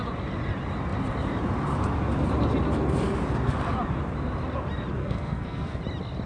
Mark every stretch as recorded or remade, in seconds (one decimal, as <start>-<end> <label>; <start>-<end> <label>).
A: 0.0-5.0 recorded; 5.0-5.8 remade; 5.8-6.3 recorded